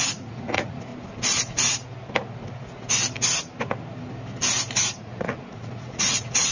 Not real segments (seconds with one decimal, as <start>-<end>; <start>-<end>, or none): 0.0-0.9; 4.8-6.5